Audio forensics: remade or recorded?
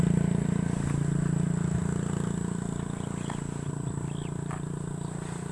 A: recorded